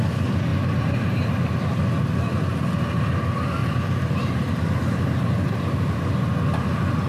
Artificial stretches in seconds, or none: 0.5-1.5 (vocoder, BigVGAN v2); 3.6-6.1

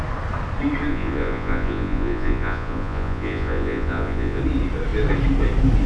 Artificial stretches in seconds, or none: 0.9-4.4 (vocoder, Vocos)

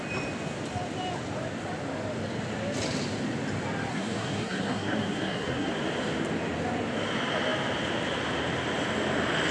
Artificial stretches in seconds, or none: 3.9-5.7 (codec, SNAC)

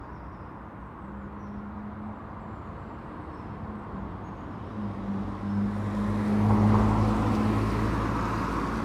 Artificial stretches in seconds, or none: none

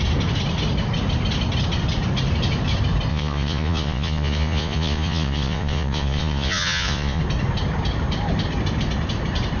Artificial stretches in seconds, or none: 3.1-7.2 (vocoder, Vocos)

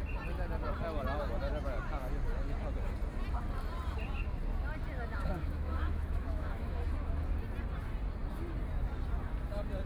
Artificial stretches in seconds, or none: 5.1-6.8 (autoencoder, DAC-VAE)

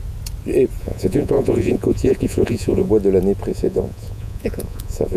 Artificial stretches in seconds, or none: 0.8-2.9 (vocoder, Vocos); 3.5-5.2

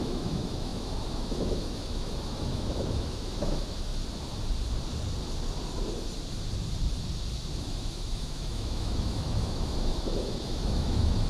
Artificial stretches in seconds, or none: 0.0-3.9 (autoencoder, DAC-VAE); 7.6-11.3